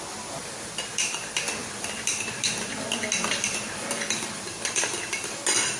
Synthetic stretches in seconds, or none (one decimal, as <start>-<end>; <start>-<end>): none

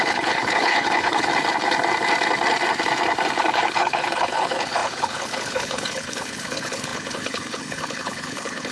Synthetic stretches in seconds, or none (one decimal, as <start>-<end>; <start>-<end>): 0.0-1.3; 3.5-8.7

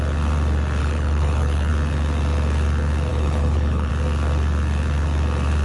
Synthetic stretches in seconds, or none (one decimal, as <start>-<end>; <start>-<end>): 0.8-1.7; 3.1-3.9